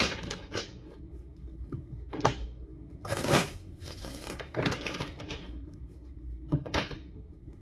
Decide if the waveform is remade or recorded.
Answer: remade